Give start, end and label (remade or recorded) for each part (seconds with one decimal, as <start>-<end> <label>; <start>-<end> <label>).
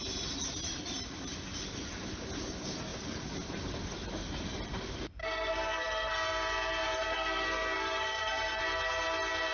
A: 0.0-5.2 recorded; 5.2-6.1 remade; 6.1-7.0 recorded; 7.0-8.6 remade; 8.6-9.5 recorded